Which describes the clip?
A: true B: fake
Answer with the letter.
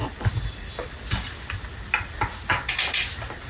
A